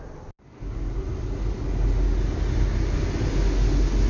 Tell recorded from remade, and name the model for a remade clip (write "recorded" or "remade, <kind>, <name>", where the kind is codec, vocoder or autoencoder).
recorded